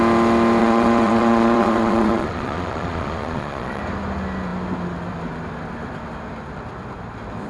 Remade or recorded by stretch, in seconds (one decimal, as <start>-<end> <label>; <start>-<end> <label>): 0.0-0.6 recorded; 0.6-3.8 remade; 3.8-7.5 recorded

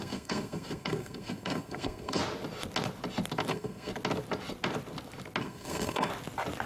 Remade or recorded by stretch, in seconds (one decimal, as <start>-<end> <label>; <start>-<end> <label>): 0.0-2.2 remade; 2.2-3.5 recorded; 3.5-3.9 remade; 3.9-5.4 recorded; 5.4-6.1 remade; 6.1-6.7 recorded

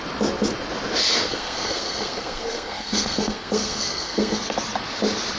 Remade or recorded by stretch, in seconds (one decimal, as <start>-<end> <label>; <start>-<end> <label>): 0.0-1.3 recorded; 1.3-4.5 remade; 4.5-5.4 recorded

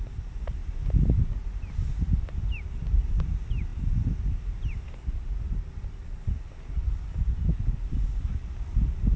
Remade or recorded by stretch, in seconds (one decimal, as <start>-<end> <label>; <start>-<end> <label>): 0.0-9.2 recorded

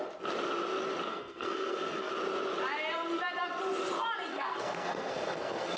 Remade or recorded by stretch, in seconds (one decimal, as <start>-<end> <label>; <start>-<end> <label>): 0.0-1.1 recorded; 1.1-2.1 remade; 2.1-4.3 recorded; 4.3-5.8 remade